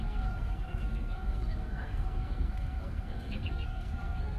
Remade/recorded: remade